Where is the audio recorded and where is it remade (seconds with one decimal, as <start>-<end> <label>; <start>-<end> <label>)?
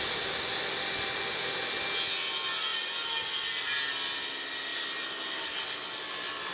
0.0-6.5 recorded